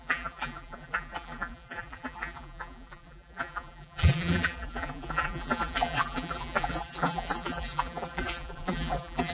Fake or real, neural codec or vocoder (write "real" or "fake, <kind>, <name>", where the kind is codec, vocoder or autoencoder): fake, vocoder, BigVGAN v2